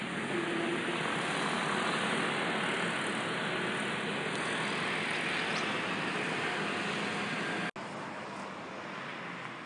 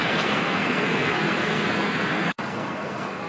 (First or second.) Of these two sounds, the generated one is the second